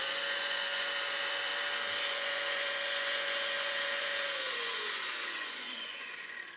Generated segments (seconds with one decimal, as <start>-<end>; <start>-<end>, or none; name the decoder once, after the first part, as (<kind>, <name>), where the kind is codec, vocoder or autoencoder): 0.0-1.5 (vocoder, Vocos); 2.0-6.6